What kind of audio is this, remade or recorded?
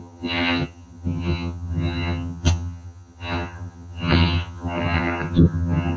remade